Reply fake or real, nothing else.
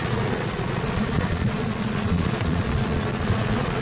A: fake